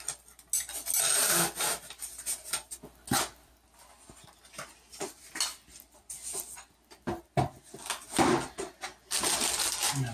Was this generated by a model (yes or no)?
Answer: no